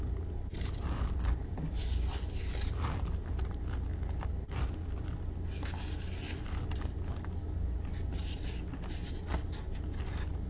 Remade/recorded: recorded